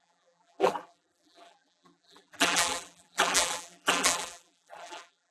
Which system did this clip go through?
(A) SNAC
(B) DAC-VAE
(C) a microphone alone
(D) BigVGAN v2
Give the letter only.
D